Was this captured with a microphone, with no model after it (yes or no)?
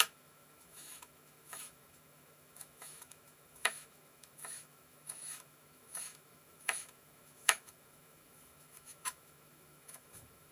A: no